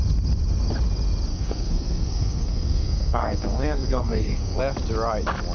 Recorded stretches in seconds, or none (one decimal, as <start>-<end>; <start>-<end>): 0.0-1.3; 4.6-5.5